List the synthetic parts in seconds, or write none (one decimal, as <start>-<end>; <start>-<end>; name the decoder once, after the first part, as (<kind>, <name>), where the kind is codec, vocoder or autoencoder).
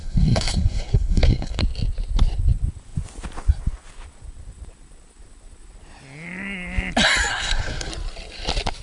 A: 0.0-1.6 (codec, SNAC); 7.3-7.9